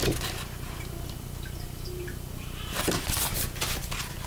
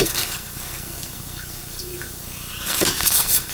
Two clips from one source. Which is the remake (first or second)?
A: second